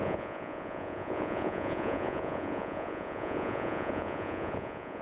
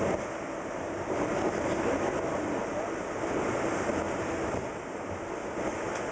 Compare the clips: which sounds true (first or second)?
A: second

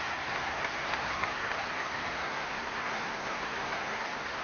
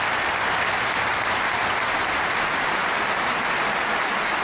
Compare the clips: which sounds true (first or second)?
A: second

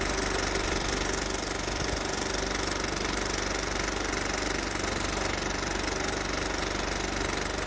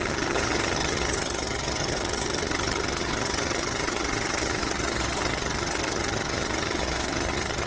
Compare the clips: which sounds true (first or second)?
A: first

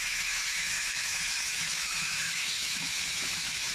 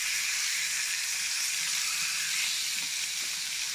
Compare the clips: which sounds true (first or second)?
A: second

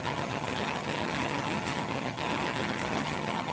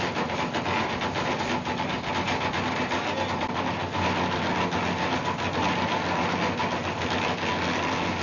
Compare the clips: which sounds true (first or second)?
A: second